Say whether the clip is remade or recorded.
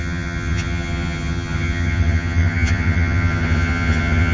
remade